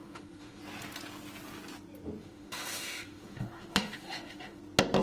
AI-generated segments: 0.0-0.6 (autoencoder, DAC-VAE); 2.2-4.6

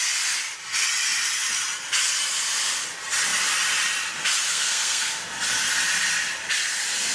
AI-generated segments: 4.5-5.2 (codec, SNAC)